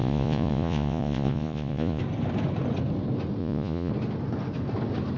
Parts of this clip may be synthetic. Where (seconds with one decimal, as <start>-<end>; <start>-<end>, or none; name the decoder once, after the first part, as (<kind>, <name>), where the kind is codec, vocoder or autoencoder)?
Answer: 0.0-2.0 (vocoder, Vocos); 3.4-3.9